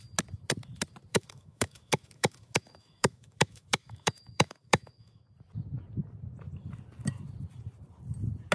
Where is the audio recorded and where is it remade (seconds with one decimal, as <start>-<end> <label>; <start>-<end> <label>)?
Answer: 0.0-1.1 recorded; 1.1-5.3 remade; 5.3-8.5 recorded